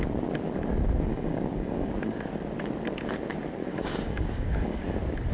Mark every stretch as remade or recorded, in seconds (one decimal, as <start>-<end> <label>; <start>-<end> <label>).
0.0-1.1 recorded; 1.1-1.9 remade; 1.9-3.6 recorded; 3.6-4.8 remade; 4.8-5.3 recorded